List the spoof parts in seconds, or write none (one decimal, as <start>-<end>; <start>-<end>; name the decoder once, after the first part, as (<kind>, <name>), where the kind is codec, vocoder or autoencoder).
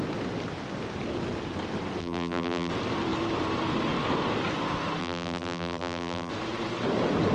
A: 2.0-2.7 (vocoder, BigVGAN v2); 5.0-6.3